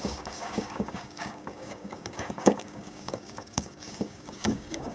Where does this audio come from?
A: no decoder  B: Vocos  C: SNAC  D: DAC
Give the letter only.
D